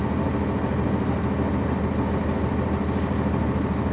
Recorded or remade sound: recorded